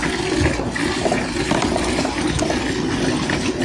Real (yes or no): yes